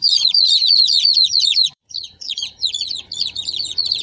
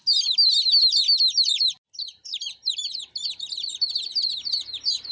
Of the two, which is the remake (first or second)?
first